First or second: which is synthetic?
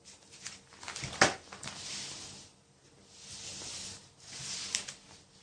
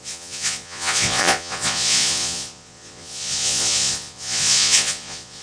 second